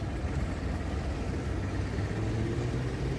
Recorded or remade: recorded